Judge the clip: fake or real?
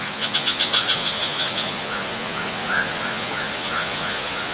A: fake